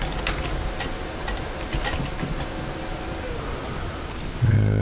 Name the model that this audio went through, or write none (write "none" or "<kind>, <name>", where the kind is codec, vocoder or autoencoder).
none